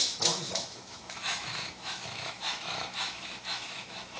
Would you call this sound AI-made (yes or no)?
yes